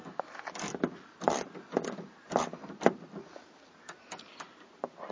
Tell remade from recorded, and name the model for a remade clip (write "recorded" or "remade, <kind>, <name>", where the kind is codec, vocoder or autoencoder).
recorded